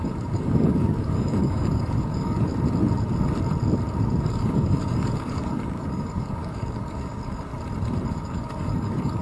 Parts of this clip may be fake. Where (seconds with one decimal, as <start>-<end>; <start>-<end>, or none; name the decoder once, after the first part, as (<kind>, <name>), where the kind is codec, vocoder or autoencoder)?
0.0-2.5 (codec, DAC); 4.2-7.5; 8.1-9.2